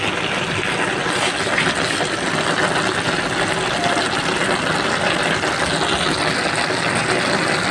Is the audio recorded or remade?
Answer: recorded